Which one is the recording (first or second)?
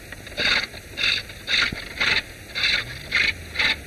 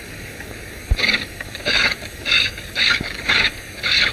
first